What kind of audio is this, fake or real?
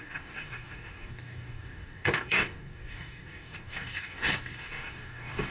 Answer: fake